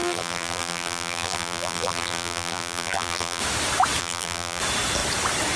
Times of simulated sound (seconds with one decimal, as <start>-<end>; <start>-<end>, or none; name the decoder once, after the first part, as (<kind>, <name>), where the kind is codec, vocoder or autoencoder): 0.0-3.4 (vocoder, BigVGAN v2); 4.0-4.6